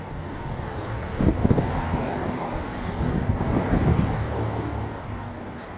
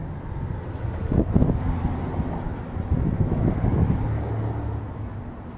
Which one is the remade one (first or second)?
first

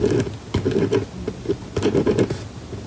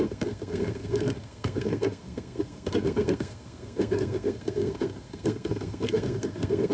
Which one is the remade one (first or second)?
second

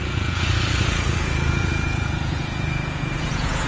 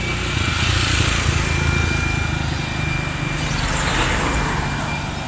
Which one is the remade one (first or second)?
first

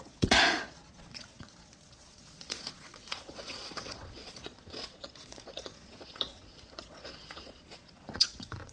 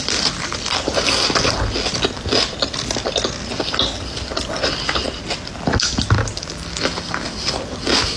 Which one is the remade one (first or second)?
first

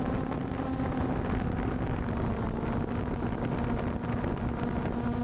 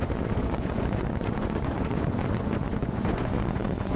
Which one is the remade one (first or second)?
second